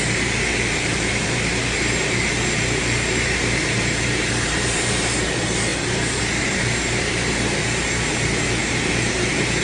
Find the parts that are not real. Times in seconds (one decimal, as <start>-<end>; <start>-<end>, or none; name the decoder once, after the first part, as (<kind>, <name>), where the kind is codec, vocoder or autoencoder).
0.0-9.6 (vocoder, BigVGAN v2)